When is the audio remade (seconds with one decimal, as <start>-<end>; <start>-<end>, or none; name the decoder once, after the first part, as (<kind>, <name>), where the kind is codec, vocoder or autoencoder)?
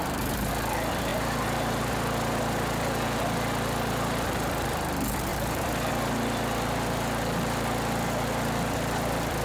0.0-0.5 (vocoder, BigVGAN v2); 1.1-1.9; 5.3-5.9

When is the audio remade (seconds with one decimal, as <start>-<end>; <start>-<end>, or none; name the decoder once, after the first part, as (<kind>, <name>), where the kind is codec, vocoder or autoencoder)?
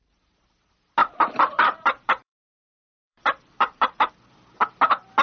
1.0-4.1 (vocoder, BigVGAN v2)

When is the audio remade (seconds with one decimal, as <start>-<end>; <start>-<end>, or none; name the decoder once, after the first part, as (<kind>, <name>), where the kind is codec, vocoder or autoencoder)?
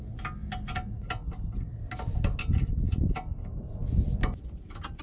none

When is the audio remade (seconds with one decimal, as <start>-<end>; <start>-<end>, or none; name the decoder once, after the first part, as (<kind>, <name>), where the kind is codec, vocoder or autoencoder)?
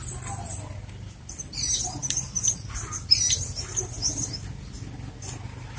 none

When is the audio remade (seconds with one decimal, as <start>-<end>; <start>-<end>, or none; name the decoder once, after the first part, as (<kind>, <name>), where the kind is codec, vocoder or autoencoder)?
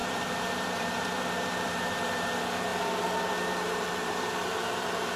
0.0-2.3 (vocoder, BigVGAN v2); 2.7-5.2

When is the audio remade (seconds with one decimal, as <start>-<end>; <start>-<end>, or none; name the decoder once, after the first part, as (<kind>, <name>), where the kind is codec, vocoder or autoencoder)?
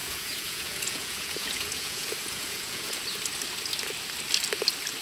0.0-3.0 (vocoder, Vocos)